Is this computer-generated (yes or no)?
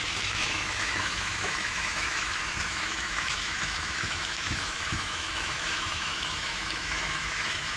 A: yes